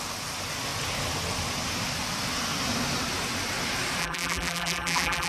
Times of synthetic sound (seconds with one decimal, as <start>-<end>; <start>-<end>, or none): 4.0-5.3